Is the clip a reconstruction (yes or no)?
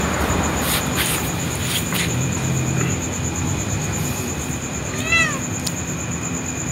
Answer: yes